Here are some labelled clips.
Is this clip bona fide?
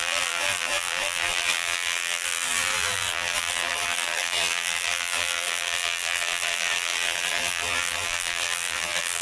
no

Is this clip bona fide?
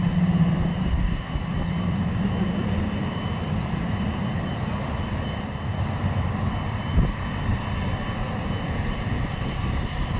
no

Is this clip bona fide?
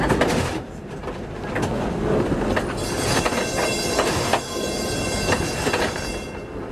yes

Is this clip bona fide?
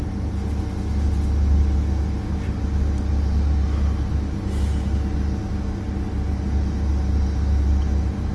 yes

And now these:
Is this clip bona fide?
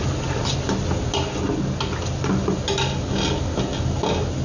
yes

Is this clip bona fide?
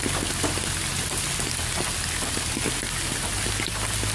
yes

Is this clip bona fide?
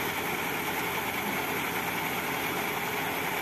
yes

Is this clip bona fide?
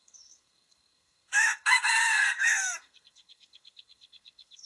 no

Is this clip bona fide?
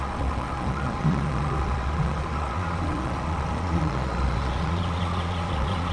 no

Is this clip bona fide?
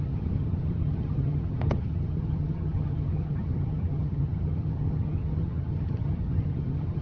no